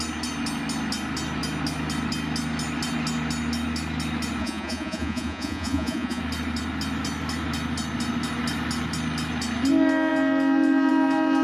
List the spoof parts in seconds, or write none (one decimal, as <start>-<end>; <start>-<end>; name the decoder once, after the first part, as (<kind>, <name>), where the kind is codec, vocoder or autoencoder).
4.4-6.2 (vocoder, Vocos)